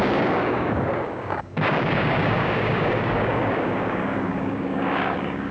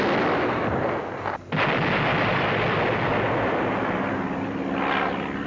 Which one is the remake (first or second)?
first